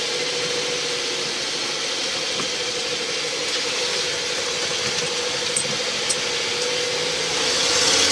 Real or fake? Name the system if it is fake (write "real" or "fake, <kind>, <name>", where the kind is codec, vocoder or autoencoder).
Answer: real